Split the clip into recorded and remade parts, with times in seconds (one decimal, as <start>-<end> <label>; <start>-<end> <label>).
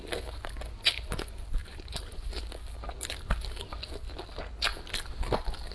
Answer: 0.0-1.6 recorded; 1.6-2.3 remade; 2.3-5.7 recorded